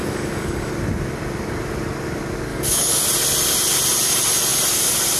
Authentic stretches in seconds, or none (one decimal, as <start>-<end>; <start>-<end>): 0.7-2.5; 3.0-5.2